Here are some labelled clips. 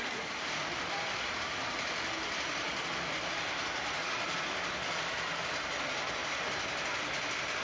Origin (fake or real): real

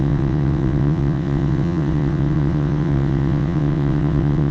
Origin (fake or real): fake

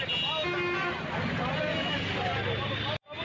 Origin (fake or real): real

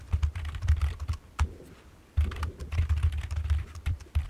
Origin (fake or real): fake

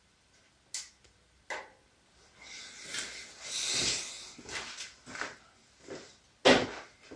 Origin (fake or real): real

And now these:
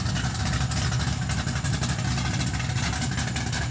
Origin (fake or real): real